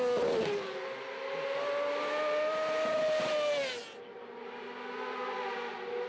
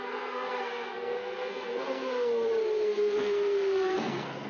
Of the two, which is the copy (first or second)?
second